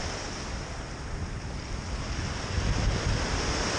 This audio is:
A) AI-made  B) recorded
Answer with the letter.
B